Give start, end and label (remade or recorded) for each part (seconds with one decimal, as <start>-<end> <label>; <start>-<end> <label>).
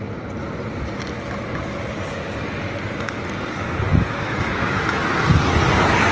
0.0-3.9 recorded; 3.9-5.0 remade; 5.0-6.1 recorded